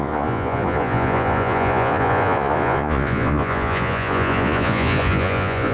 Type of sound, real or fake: fake